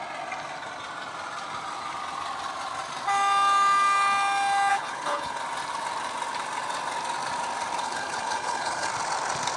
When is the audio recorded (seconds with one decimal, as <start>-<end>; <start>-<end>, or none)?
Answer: 0.0-4.7; 5.4-7.8; 8.9-9.6